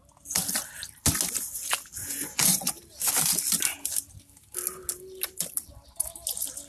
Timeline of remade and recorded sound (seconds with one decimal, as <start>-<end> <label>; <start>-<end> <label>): 0.0-2.0 recorded; 2.0-2.7 remade; 2.7-6.7 recorded

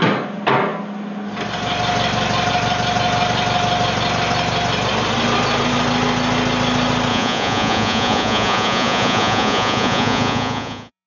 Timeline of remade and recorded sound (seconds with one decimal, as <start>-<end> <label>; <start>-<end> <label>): 0.0-7.1 recorded; 7.1-11.1 remade

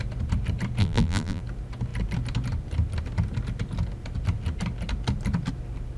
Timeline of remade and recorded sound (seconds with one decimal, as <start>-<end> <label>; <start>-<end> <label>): 0.0-0.8 recorded; 0.8-1.4 remade; 1.4-6.0 recorded

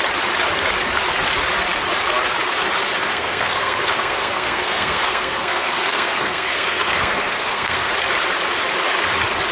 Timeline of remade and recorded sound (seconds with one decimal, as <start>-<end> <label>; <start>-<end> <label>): 0.0-3.1 recorded; 3.1-7.9 remade; 7.9-9.5 recorded

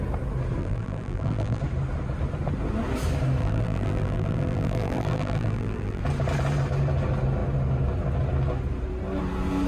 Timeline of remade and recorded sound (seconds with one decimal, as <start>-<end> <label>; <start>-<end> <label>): 0.0-0.6 recorded; 0.6-1.6 remade; 1.6-3.4 recorded; 3.4-6.0 remade; 6.0-9.7 recorded

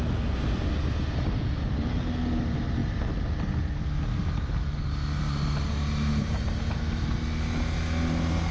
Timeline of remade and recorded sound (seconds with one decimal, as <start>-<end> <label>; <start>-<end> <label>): 0.0-8.5 recorded

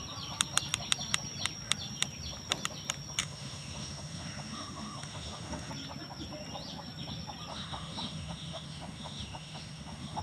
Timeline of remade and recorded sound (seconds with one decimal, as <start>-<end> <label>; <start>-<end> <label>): 0.0-3.2 recorded; 3.2-5.7 remade; 5.7-7.5 recorded; 7.5-10.2 remade

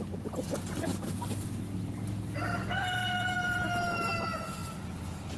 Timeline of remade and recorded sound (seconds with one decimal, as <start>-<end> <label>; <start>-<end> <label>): 0.0-2.5 recorded; 2.5-3.6 remade; 3.6-5.4 recorded